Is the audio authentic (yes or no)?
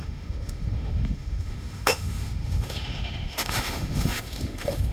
no